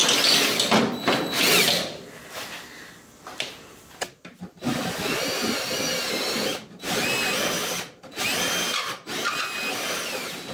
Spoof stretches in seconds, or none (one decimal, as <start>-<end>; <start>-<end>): none